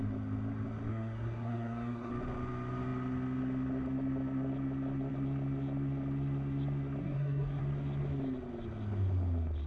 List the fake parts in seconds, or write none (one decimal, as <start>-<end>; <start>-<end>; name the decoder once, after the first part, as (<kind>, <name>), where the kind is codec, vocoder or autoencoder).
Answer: 0.9-2.1 (codec, SNAC); 7.0-7.6